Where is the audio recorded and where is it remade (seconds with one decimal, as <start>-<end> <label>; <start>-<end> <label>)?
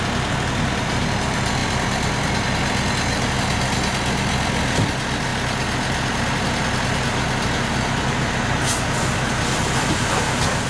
0.0-10.7 recorded